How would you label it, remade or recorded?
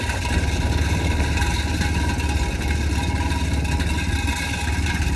recorded